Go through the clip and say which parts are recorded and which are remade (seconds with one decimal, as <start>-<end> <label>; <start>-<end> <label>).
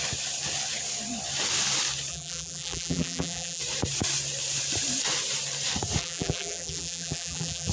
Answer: 0.0-2.1 recorded; 2.1-3.6 remade; 3.6-6.0 recorded; 6.0-7.7 remade